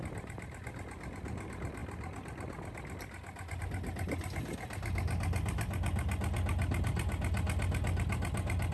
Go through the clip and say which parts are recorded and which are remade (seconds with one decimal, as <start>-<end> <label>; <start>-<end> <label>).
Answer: 0.0-8.7 recorded